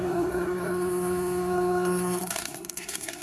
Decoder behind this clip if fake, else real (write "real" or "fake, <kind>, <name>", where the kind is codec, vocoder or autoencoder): fake, codec, SNAC